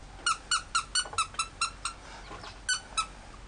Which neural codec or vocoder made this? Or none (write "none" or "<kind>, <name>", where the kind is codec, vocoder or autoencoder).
none